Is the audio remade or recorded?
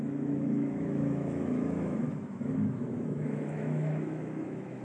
remade